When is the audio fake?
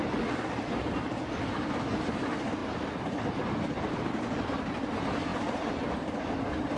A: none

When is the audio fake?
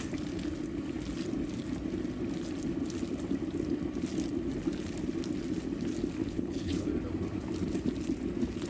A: 6.2-6.9 (codec, HILCodec)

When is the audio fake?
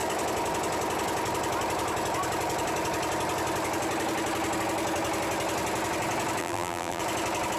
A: 6.4-7.0 (vocoder, BigVGAN v2)